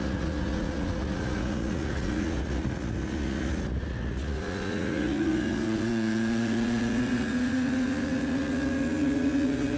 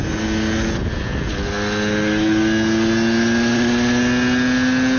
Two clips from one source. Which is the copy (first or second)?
first